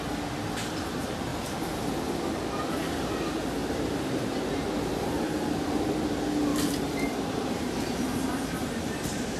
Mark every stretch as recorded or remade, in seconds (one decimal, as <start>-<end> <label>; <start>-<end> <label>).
0.0-1.3 recorded; 1.3-1.9 remade; 1.9-3.6 recorded; 3.6-5.7 remade; 5.7-6.5 recorded; 6.5-9.4 remade